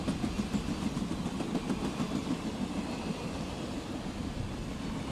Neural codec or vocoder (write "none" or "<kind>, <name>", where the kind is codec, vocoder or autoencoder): none